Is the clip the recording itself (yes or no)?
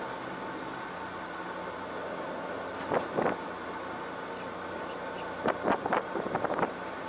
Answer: yes